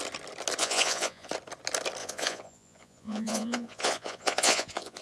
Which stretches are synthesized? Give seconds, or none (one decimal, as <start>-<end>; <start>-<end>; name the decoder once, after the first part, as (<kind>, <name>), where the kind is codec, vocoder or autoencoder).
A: 0.6-1.3 (vocoder, Vocos); 2.0-5.0